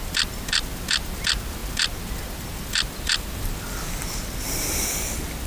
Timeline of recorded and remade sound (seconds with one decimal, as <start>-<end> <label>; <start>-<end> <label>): 0.0-5.5 recorded